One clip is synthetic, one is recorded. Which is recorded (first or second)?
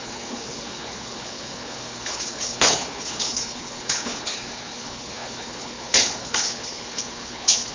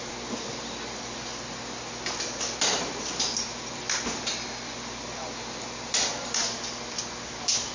second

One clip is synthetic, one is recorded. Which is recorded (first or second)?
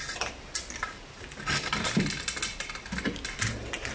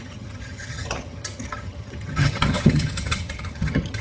first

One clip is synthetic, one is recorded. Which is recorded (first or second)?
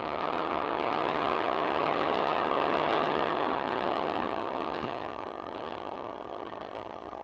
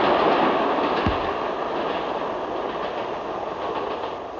second